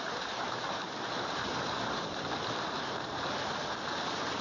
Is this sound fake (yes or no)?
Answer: no